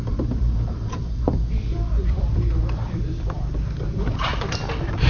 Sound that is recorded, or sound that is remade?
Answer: remade